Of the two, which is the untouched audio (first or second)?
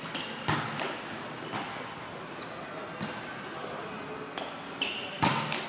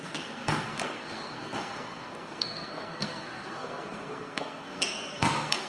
first